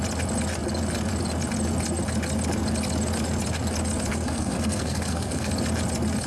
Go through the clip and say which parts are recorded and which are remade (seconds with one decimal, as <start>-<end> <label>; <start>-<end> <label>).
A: 0.0-4.1 recorded; 4.1-5.5 remade; 5.5-6.3 recorded